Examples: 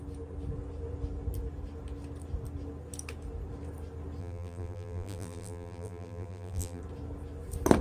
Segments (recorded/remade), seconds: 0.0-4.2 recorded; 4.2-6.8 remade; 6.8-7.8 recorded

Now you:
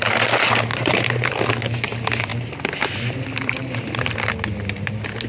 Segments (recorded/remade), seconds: 0.0-0.7 recorded; 0.7-1.3 remade; 1.3-5.3 recorded